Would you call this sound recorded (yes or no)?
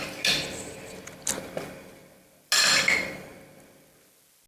yes